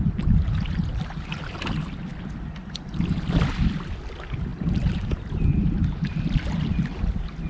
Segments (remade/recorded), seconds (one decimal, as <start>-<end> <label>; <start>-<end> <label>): 0.0-7.5 recorded